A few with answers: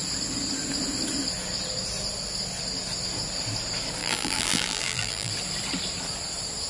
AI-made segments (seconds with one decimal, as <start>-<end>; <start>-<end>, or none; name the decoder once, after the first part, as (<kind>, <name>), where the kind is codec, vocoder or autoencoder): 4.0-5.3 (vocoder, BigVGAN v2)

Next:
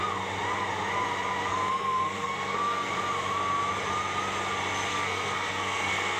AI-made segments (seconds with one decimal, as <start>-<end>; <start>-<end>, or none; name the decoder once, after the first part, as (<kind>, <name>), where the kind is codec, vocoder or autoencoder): 1.5-2.9 (codec, SNAC); 4.9-6.2

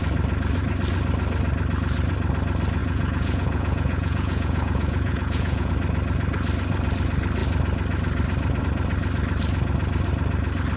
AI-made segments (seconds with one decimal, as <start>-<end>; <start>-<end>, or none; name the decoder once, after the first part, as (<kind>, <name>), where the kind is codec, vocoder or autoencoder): 2.8-5.7 (vocoder, Vocos)

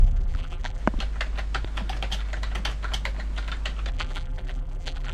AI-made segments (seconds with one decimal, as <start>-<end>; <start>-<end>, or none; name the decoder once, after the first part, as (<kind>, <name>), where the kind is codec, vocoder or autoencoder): 0.0-0.8 (vocoder, BigVGAN v2); 3.9-5.1

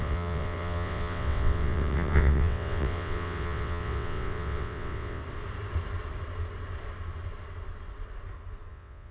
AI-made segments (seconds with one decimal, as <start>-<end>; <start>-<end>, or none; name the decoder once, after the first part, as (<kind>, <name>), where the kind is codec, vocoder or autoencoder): 0.0-5.2 (vocoder, WaveNeXt); 8.7-9.1

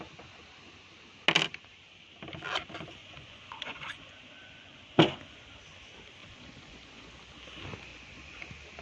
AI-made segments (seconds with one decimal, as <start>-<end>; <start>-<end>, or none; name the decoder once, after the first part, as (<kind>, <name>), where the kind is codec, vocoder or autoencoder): 3.0-5.6 (vocoder, Vocos); 6.2-7.1; 7.9-8.4

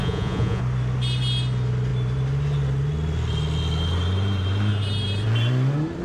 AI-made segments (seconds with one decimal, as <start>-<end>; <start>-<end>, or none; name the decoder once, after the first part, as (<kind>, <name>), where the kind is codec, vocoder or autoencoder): 0.0-0.6 (vocoder, Vocos)